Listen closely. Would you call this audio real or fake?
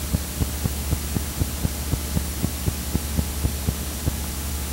real